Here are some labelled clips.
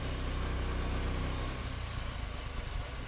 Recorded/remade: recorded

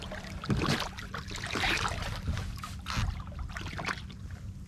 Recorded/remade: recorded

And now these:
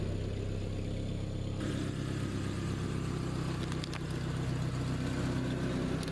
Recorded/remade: recorded